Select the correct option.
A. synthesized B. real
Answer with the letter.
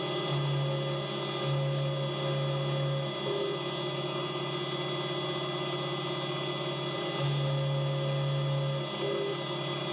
B